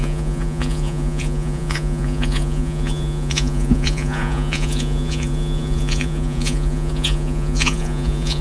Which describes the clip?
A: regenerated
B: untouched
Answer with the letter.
A